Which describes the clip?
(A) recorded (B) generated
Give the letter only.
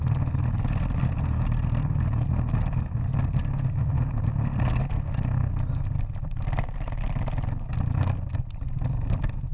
A